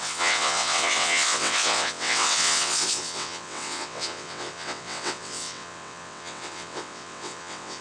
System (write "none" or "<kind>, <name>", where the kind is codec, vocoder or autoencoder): vocoder, WaveNeXt